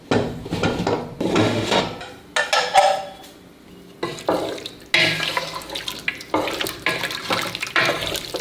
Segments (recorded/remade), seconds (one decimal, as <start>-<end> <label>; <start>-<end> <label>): 0.0-1.3 recorded; 1.3-1.8 remade; 1.8-8.4 recorded